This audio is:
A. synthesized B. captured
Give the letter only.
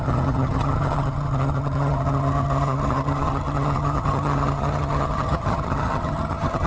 A